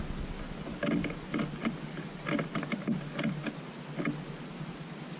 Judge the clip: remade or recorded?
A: recorded